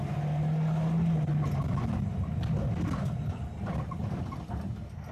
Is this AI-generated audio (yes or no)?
no